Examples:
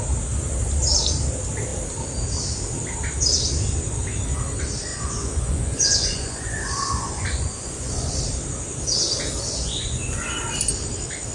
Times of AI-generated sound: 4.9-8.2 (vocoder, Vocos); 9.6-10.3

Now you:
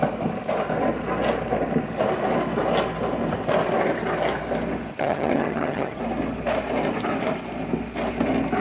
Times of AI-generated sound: 4.9-6.0 (vocoder, HiFi-GAN)

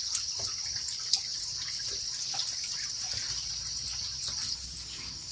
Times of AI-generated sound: 1.3-2.0 (vocoder, BigVGAN v2); 2.4-3.5

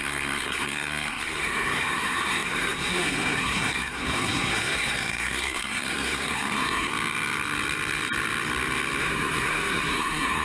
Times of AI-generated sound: 0.0-6.9 (codec, SNAC); 9.0-10.4

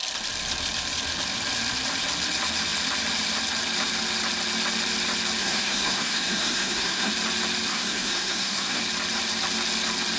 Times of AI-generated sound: 5.4-7.1 (codec, SNAC); 7.7-8.8